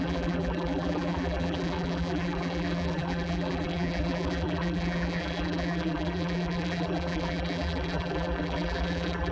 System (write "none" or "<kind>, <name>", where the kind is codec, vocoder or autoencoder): vocoder, BigVGAN v2